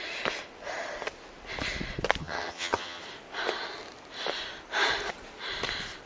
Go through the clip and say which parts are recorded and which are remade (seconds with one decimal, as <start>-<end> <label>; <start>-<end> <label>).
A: 0.0-2.2 recorded; 2.2-3.0 remade; 3.0-6.1 recorded